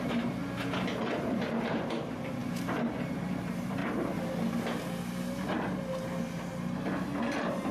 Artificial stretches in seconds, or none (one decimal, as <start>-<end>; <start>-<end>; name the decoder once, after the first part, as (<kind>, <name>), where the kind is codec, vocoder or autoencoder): 0.0-0.4 (vocoder, BigVGAN v2); 1.1-3.8